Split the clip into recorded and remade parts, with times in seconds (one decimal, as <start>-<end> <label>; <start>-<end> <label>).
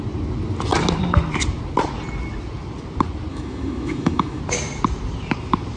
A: 0.0-3.3 recorded; 3.3-4.4 remade; 4.4-5.8 recorded